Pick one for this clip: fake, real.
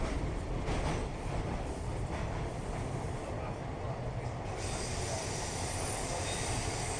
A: fake